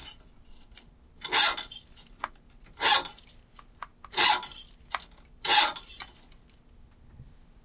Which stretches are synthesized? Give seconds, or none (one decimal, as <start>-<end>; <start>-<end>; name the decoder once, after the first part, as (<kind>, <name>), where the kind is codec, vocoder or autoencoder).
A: none